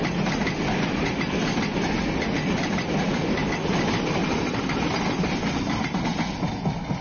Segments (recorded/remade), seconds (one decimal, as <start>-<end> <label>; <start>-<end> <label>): 0.0-7.0 recorded